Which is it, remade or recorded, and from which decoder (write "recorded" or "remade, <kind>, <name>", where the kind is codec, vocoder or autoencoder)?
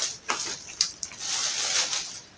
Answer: recorded